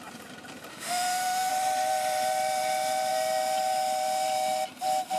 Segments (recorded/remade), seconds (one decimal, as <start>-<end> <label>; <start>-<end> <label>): 0.0-0.7 recorded; 0.7-1.5 remade; 1.5-5.2 recorded